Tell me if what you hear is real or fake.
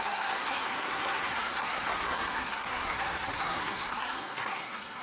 fake